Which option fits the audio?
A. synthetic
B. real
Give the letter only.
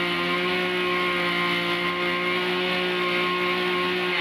B